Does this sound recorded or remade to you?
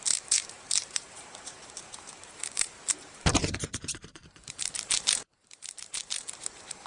remade